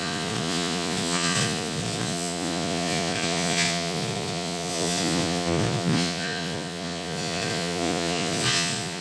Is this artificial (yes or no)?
yes